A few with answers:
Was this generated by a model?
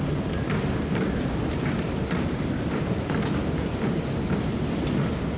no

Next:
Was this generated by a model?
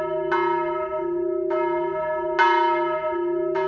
no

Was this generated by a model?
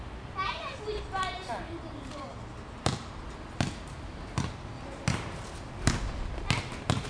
no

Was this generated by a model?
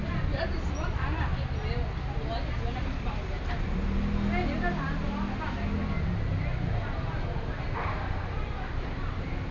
no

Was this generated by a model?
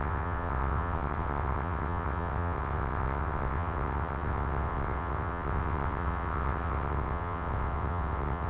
yes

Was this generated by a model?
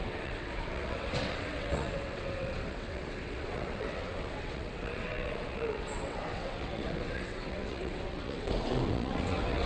yes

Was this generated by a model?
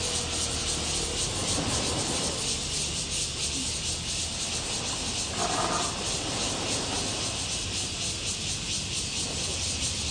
no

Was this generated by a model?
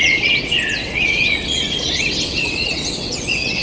yes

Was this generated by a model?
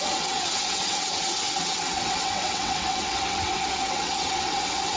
yes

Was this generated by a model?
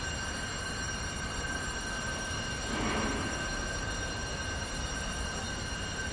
no